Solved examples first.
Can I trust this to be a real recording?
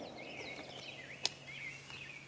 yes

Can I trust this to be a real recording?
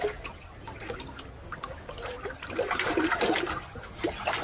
yes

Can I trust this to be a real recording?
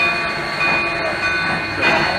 yes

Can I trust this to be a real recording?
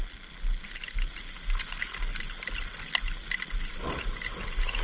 yes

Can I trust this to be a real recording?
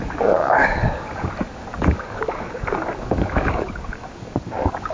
no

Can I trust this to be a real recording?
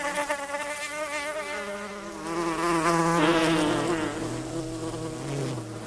yes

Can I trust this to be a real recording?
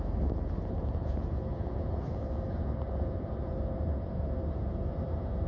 yes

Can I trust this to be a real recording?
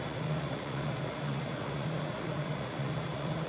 no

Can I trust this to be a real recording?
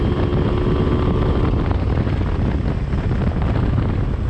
yes